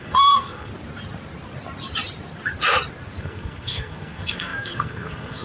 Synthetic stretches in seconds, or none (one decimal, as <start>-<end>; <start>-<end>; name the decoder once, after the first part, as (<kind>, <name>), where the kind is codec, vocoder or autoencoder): 0.0-0.7 (codec, SNAC); 3.2-5.4